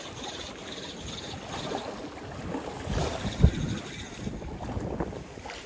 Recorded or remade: recorded